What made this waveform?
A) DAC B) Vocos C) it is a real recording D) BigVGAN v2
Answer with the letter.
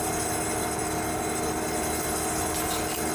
C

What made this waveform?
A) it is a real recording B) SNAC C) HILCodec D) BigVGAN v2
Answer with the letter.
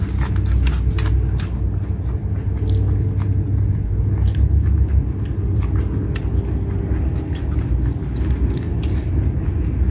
A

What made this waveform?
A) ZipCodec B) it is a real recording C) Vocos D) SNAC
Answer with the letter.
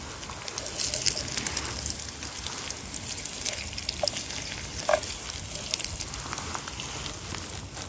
B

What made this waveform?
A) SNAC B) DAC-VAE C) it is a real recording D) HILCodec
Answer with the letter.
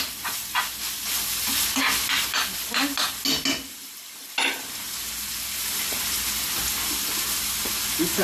C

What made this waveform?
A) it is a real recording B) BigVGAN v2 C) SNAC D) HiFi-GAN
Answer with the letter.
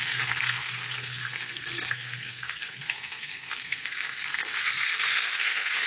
C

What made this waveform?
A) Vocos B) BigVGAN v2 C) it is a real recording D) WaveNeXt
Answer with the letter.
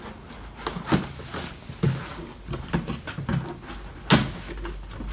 C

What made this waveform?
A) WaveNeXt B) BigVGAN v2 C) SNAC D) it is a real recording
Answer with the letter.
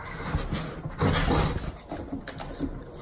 D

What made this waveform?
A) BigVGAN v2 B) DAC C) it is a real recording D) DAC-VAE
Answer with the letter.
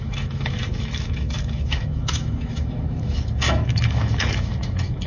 D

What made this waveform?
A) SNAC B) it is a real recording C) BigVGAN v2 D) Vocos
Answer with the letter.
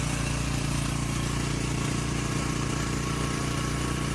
C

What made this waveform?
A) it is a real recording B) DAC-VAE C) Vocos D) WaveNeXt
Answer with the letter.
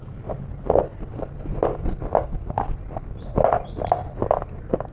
A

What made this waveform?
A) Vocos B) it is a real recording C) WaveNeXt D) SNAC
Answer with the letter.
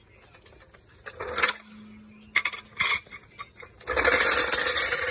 B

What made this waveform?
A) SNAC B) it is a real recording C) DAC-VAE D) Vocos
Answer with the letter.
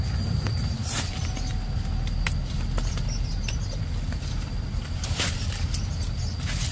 B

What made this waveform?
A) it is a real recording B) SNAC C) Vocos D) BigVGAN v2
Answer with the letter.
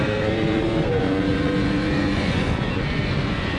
C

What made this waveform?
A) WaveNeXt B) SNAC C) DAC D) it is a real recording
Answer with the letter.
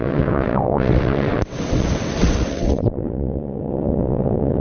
A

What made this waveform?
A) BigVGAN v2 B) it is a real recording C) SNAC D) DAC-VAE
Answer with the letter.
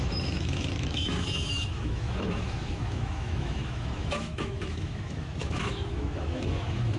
D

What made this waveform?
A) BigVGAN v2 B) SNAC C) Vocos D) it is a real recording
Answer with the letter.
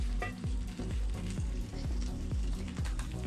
A